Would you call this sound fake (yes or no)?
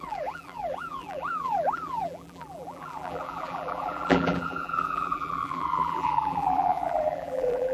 yes